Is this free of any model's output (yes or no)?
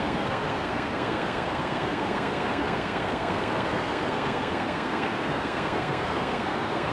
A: no